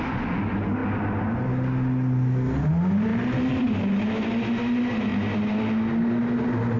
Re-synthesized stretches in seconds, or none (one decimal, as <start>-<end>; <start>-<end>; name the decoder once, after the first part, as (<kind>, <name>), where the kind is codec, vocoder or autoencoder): none